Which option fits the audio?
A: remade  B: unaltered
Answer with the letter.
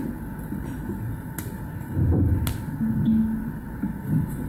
B